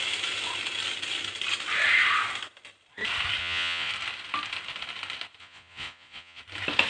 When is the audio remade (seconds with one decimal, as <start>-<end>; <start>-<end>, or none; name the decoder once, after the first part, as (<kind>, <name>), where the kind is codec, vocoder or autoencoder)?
3.4-3.9 (vocoder, Vocos); 5.4-6.4